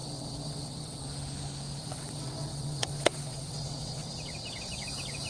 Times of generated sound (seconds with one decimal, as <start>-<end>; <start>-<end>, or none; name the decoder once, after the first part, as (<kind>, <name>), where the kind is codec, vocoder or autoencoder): 0.0-1.0 (vocoder, WaveNeXt); 1.8-4.7